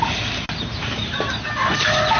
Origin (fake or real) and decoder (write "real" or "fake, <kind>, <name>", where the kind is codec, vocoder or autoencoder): real